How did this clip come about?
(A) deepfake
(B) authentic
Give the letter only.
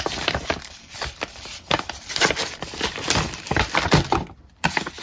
A